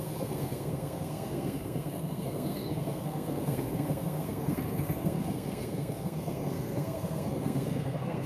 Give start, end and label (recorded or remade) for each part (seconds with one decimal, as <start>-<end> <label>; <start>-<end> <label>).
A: 0.0-8.3 remade